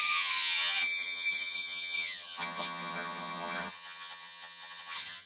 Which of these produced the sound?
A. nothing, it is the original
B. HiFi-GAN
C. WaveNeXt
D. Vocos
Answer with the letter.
B